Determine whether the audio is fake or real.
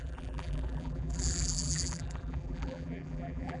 fake